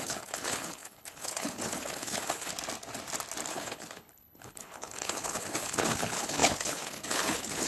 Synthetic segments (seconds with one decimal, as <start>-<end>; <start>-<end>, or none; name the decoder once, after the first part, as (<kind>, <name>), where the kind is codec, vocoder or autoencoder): 0.0-2.5 (codec, HILCodec); 3.5-7.7

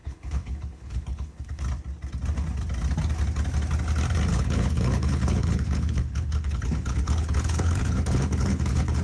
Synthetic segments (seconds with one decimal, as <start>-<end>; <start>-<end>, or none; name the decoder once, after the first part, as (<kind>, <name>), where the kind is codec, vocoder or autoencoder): 0.0-1.6 (codec, HILCodec); 4.3-9.0